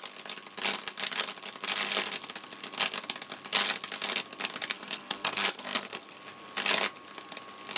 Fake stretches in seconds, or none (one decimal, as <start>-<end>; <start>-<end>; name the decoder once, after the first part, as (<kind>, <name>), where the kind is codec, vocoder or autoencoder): 4.7-6.2 (codec, SNAC)